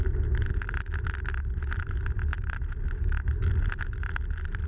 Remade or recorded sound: recorded